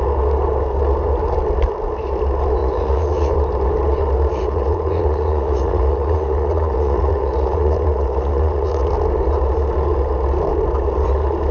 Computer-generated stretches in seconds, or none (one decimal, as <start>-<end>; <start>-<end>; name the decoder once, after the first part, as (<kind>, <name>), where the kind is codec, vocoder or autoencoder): 2.6-3.3 (vocoder, Vocos); 4.3-8.9

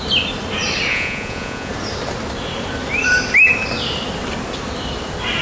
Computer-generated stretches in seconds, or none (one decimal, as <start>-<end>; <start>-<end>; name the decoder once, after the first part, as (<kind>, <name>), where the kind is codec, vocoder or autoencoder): 0.9-1.7 (vocoder, Vocos)

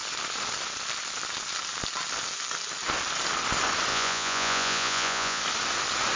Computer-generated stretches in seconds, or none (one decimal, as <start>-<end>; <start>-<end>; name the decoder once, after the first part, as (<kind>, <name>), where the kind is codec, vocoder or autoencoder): 3.9-5.4 (vocoder, Vocos)

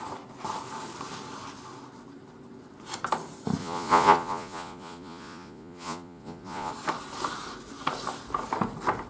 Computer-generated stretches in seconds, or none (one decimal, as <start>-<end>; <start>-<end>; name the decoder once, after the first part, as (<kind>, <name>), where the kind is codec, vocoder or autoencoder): 3.6-6.7 (vocoder, Vocos)

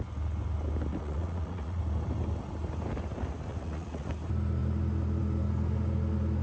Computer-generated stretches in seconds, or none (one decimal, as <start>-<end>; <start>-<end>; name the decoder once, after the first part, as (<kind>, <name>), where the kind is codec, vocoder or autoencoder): 0.9-1.8 (vocoder, Vocos); 3.5-4.1